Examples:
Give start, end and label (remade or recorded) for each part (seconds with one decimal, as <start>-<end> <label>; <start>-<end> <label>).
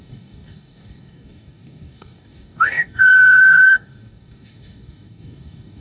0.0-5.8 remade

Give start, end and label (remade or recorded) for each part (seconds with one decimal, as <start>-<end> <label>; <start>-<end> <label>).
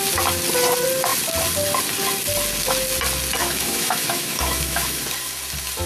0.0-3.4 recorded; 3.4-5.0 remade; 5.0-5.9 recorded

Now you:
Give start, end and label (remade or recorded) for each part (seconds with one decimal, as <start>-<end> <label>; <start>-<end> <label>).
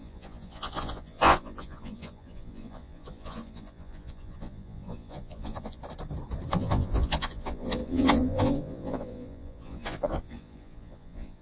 0.0-5.8 remade; 5.8-6.5 recorded; 6.5-11.4 remade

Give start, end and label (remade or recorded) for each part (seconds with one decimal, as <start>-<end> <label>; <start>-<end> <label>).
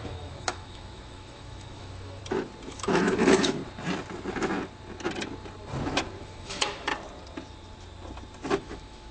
0.0-2.2 remade; 2.2-2.7 recorded; 2.7-3.6 remade; 3.6-6.2 recorded; 6.2-6.9 remade; 6.9-8.6 recorded; 8.6-9.1 remade